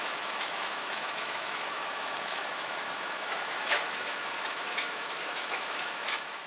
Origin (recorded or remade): remade